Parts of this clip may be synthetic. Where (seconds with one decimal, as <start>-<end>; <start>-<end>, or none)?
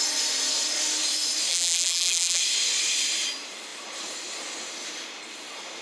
1.5-2.4